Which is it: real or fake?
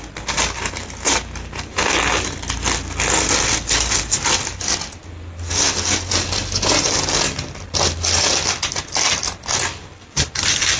real